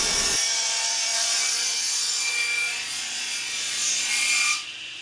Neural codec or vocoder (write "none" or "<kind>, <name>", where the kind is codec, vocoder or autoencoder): vocoder, Vocos